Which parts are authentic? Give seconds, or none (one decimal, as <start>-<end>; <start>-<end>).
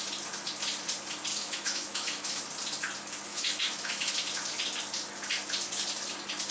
0.0-1.3; 2.4-3.3; 4.1-6.5